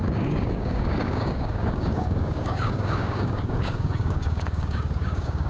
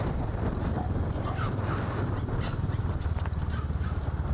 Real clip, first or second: second